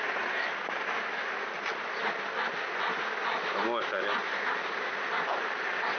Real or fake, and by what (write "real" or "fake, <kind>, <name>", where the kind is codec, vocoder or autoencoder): real